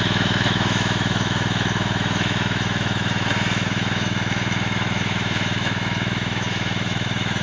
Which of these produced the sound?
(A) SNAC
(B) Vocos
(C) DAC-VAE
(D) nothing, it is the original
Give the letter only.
C